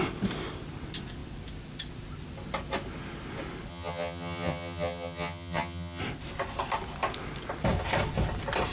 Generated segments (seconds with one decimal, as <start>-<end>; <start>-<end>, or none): 3.7-6.0